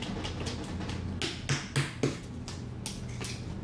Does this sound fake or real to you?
real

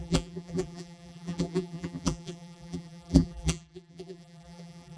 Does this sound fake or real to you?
fake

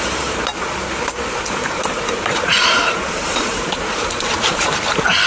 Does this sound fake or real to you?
fake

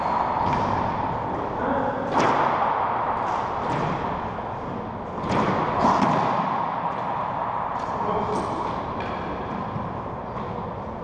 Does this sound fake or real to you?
real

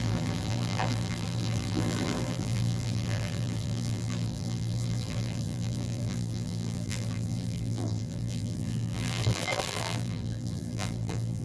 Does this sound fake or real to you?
fake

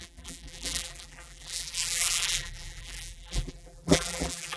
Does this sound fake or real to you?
fake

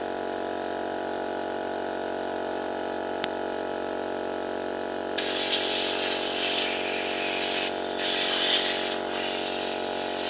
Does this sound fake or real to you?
real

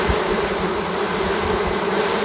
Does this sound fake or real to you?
fake